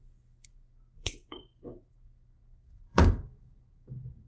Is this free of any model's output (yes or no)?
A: no